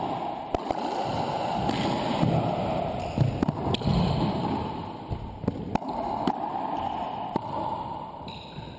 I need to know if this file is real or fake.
real